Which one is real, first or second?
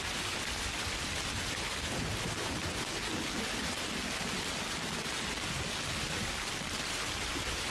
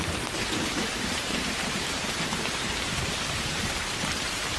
first